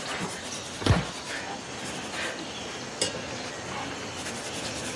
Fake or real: real